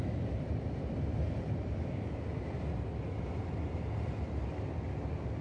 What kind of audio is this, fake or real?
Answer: real